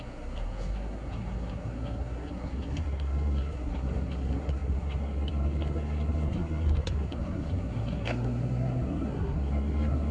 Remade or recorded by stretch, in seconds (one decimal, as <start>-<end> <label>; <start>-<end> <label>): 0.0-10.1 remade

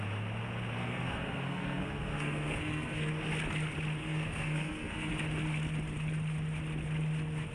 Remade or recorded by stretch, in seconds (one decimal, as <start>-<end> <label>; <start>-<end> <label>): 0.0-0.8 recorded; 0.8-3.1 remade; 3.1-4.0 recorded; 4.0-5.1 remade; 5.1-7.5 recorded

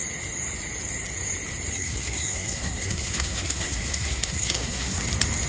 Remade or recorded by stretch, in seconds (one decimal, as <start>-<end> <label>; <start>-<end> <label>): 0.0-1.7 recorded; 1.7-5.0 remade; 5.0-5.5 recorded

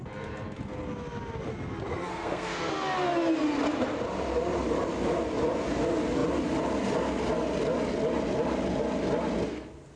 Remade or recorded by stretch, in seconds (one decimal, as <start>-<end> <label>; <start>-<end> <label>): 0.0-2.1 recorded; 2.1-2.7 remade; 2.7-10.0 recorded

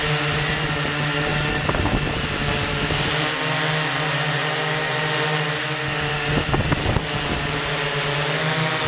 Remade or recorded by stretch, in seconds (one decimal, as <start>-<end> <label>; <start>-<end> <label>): 0.0-8.9 recorded

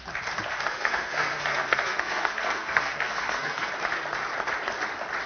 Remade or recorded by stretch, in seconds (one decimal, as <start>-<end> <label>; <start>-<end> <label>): 0.0-0.5 recorded; 0.5-3.7 remade; 3.7-5.3 recorded

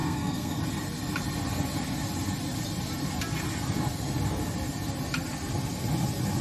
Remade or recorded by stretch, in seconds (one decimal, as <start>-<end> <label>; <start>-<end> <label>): 0.0-0.6 remade; 0.6-6.4 recorded

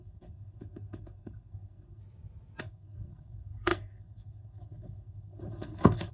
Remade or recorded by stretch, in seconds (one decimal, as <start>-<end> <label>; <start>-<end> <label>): 0.0-2.0 remade; 2.0-2.6 recorded; 2.6-6.1 remade